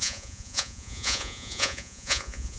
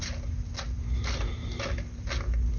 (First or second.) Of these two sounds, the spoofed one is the first